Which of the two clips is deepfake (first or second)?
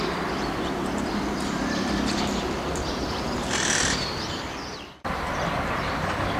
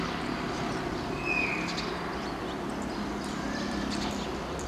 first